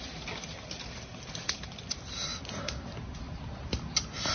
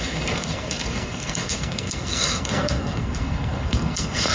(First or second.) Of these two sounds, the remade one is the second